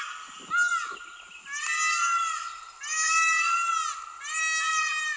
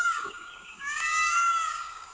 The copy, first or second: second